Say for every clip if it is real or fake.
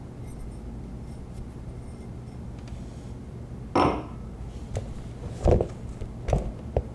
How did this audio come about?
real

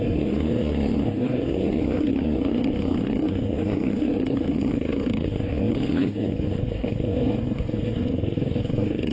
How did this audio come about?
fake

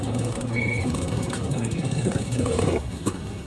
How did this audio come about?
fake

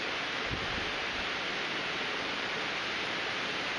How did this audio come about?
fake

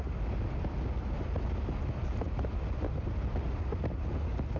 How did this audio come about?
real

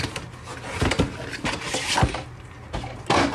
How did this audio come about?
real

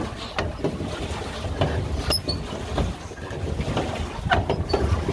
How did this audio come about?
real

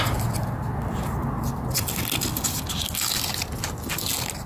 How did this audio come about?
real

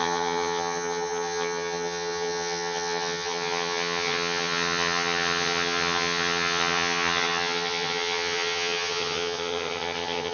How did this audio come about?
fake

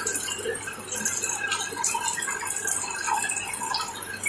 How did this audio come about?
real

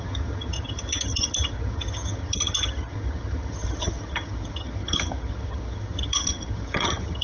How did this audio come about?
fake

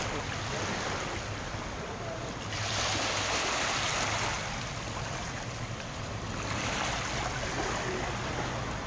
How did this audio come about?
real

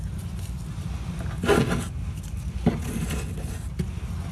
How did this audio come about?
real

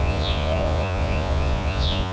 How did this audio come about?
fake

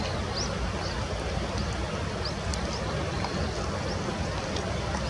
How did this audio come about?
real